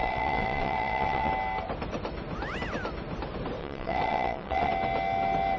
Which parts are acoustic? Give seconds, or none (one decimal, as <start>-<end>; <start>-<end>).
1.3-3.6; 4.7-5.6